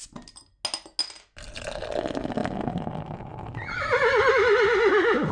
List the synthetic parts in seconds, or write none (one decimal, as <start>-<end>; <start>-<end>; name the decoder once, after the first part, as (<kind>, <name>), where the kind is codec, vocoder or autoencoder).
none